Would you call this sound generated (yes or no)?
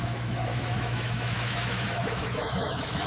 yes